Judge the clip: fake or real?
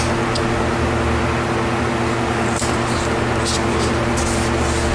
real